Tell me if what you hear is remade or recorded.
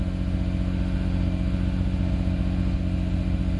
recorded